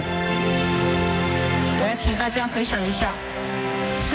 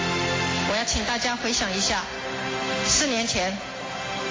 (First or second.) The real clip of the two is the second